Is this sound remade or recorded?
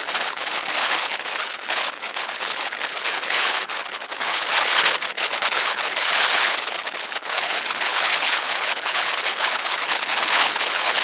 remade